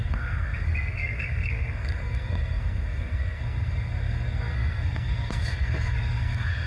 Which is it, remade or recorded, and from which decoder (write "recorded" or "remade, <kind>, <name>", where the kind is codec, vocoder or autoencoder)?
remade, codec, SNAC